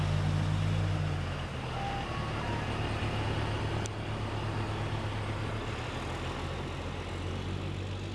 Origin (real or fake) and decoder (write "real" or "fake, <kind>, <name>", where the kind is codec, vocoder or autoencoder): real